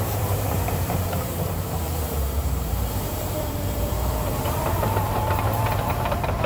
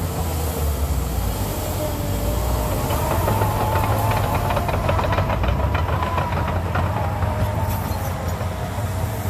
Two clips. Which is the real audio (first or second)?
second